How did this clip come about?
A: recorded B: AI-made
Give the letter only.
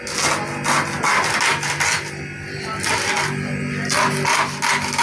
A